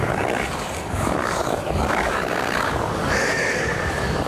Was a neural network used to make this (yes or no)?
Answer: yes